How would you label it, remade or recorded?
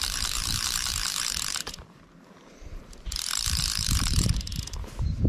remade